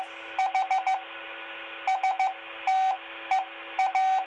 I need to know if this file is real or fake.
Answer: real